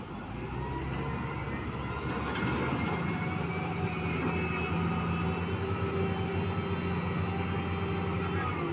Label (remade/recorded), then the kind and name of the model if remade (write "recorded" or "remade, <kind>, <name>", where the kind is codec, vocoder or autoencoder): recorded